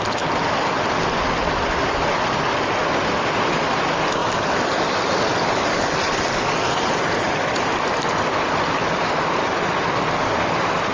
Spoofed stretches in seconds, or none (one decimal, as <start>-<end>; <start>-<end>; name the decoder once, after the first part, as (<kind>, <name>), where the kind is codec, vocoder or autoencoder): none